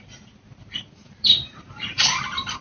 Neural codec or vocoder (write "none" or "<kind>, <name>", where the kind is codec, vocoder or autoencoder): vocoder, BigVGAN v2